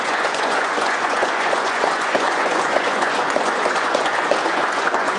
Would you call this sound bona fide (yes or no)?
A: no